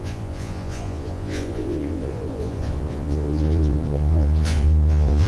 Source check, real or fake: fake